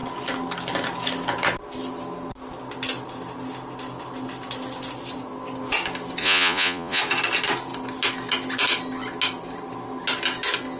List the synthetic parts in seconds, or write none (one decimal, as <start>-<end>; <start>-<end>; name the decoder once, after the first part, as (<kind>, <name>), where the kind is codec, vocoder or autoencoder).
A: 6.2-7.0 (vocoder, Vocos)